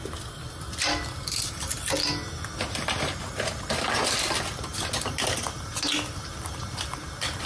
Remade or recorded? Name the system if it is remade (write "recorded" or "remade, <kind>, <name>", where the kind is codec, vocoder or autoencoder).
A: recorded